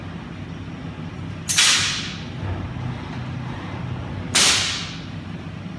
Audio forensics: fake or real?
real